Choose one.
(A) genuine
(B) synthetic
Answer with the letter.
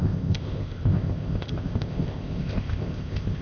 B